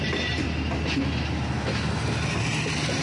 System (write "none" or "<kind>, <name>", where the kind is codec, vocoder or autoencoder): none